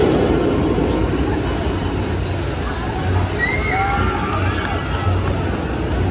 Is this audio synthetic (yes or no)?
no